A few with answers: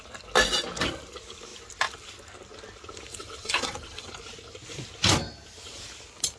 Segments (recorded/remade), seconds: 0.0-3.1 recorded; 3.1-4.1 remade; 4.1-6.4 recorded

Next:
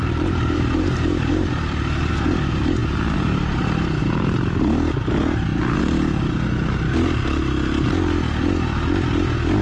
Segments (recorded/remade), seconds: 0.0-2.1 remade; 2.1-9.6 recorded

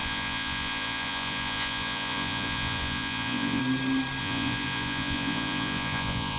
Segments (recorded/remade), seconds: 0.0-3.6 remade; 3.6-4.2 recorded; 4.2-6.4 remade